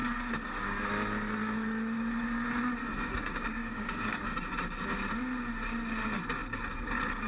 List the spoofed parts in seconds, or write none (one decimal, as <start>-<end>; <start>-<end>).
0.0-0.9; 2.8-4.4

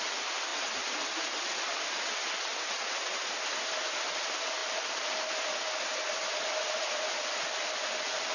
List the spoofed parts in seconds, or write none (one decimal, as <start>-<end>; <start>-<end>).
none

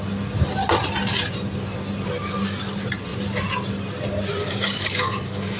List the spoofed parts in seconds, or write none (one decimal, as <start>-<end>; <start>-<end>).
4.4-5.6

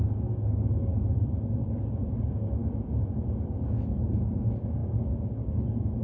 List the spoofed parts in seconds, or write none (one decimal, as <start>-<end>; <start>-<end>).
0.0-0.9; 2.2-2.6; 4.2-6.0

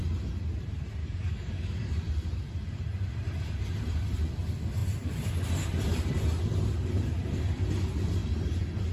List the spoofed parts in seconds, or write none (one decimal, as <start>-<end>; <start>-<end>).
1.0-1.9

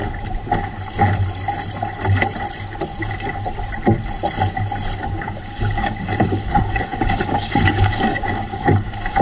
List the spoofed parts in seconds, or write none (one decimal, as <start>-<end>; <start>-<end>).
5.0-9.2